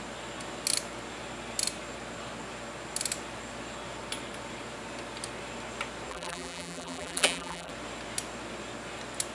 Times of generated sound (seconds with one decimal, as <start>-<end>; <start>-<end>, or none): 6.1-7.7